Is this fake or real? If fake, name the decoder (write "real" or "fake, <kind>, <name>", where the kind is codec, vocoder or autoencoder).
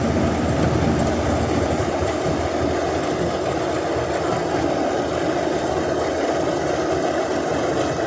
real